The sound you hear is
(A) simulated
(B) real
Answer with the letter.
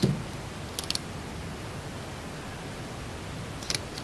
B